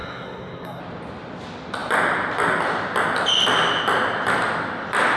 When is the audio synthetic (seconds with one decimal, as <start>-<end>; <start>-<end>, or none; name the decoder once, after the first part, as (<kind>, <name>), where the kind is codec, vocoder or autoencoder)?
0.0-0.8 (codec, SNAC)